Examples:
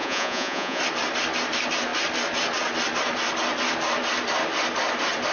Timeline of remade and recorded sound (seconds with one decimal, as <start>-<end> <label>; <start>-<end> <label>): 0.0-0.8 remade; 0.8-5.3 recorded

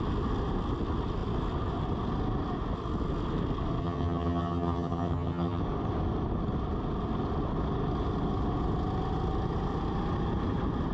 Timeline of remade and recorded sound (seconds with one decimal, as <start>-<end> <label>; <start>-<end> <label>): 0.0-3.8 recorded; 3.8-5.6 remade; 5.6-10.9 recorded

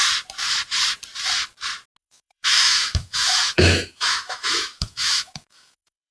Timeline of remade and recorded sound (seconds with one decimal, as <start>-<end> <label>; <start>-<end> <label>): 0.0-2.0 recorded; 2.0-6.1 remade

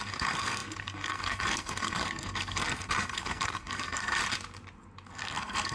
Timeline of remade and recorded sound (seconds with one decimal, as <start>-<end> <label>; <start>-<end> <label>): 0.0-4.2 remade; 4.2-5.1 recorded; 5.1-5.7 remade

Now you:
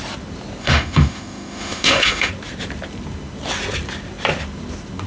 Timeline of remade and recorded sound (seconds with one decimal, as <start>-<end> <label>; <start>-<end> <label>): 0.0-0.6 recorded; 0.6-2.3 remade; 2.3-5.1 recorded